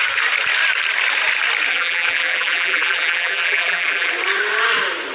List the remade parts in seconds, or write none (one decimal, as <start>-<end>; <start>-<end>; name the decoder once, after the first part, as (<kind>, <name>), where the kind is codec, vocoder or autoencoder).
1.7-4.1 (vocoder, BigVGAN v2)